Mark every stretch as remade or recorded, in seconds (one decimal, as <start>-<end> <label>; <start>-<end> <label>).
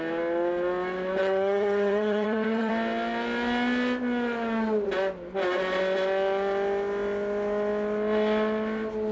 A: 0.0-1.2 recorded; 1.2-2.7 remade; 2.7-9.1 recorded